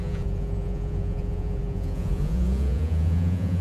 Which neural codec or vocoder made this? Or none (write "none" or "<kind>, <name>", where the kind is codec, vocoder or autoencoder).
vocoder, Vocos